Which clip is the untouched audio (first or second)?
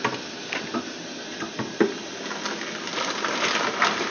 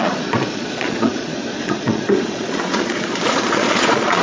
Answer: first